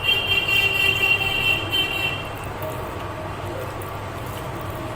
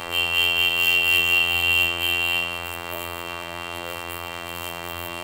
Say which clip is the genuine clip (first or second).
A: first